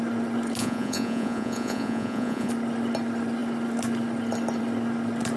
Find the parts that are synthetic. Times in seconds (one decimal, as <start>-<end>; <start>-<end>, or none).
0.6-2.5

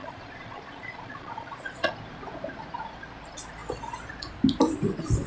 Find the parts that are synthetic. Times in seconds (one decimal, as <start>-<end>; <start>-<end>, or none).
0.0-1.9

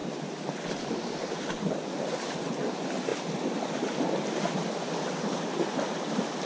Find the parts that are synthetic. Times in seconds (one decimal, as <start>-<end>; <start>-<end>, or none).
none

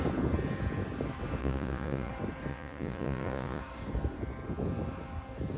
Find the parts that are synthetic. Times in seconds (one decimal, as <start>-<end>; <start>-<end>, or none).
1.4-2.1; 2.5-3.6